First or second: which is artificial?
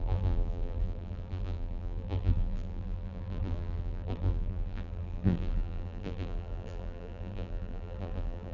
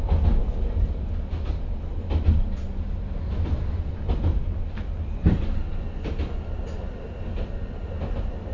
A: first